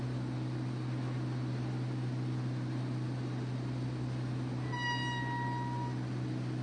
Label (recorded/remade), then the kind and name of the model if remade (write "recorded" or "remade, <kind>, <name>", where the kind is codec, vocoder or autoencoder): recorded